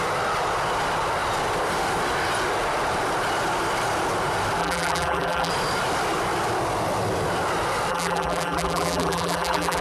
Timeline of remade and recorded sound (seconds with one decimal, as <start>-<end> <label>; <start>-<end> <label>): 0.0-4.6 recorded; 4.6-5.5 remade; 5.5-7.9 recorded; 7.9-9.8 remade